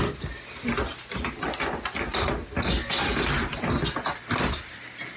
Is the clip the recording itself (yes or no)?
yes